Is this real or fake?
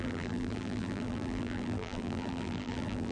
fake